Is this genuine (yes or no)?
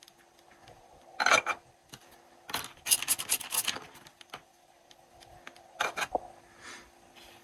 yes